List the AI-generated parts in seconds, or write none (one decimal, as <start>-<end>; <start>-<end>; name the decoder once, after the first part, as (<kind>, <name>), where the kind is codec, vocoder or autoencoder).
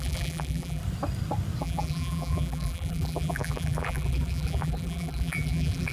0.0-0.8 (vocoder, BigVGAN v2); 1.6-5.9